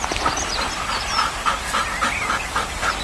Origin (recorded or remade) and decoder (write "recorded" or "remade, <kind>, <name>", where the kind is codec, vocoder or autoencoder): remade, vocoder, BigVGAN v2